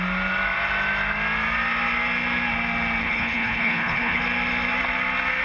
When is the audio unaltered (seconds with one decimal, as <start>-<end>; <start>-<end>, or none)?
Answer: 0.0-3.0; 4.2-5.4